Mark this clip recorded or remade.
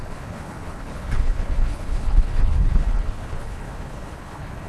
remade